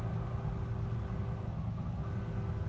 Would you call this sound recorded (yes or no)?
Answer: yes